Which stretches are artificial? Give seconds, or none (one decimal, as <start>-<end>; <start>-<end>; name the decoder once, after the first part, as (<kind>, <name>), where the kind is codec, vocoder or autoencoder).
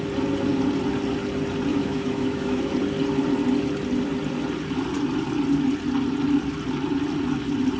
1.7-2.7 (autoencoder, DAC-VAE)